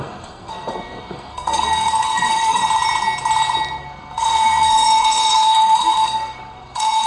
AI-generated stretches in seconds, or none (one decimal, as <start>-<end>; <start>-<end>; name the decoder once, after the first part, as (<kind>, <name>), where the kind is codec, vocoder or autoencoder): 0.0-2.6 (codec, SNAC); 3.8-7.1